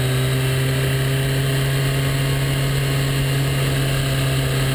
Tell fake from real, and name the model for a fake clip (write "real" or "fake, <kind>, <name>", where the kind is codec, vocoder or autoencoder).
real